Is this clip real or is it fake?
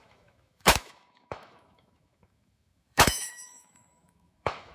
fake